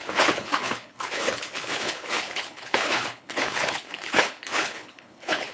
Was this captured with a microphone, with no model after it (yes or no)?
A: no